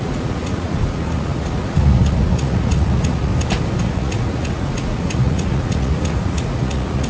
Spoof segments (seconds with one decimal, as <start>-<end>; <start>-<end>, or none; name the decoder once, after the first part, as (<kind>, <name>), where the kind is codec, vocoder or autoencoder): 0.0-3.3 (vocoder, Vocos); 3.8-7.1

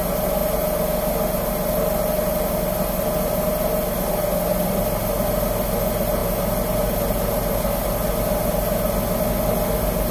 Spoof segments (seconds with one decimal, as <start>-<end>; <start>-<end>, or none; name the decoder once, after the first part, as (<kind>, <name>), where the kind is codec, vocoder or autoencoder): none

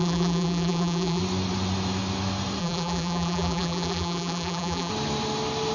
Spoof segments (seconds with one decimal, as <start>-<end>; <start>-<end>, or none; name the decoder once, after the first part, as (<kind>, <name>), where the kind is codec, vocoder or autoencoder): 0.0-1.2 (vocoder, BigVGAN v2); 2.6-4.9